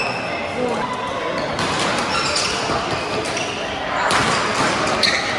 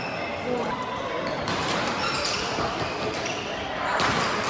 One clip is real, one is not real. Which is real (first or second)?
first